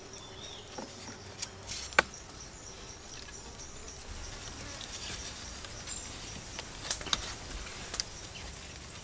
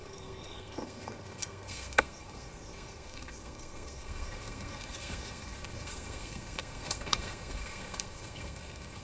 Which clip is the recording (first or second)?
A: first